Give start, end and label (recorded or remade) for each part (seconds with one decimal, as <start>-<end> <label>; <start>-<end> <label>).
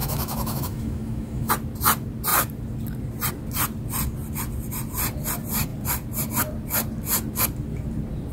0.0-1.5 remade; 1.5-8.3 recorded